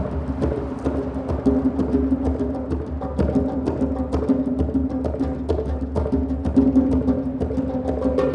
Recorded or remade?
recorded